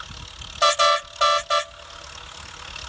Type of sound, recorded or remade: recorded